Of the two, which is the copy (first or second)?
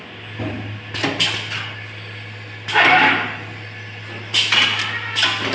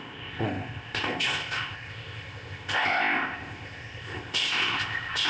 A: second